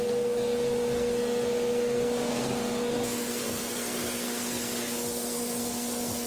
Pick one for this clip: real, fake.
fake